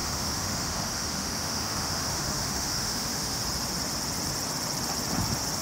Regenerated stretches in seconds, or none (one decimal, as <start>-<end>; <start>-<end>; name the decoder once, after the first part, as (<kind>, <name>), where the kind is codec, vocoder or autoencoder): 0.0-3.4 (autoencoder, DAC-VAE)